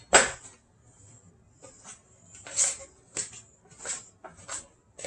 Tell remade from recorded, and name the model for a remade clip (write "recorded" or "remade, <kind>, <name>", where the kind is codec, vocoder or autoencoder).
recorded